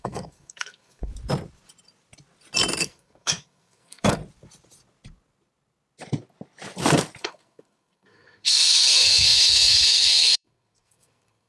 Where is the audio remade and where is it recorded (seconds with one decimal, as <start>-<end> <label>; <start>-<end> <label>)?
0.0-1.1 remade; 1.1-2.8 recorded; 2.8-4.2 remade; 4.2-7.2 recorded; 7.2-11.5 remade